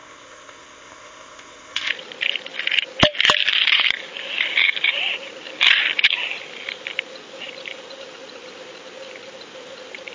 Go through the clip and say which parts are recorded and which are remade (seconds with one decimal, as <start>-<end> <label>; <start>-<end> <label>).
0.0-1.9 remade; 1.9-10.1 recorded